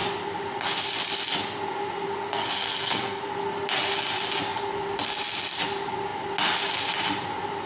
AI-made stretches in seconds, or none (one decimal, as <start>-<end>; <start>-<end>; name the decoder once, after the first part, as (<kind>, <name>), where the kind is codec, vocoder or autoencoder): 2.3-3.2 (codec, SNAC)